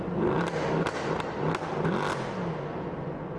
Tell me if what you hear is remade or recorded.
recorded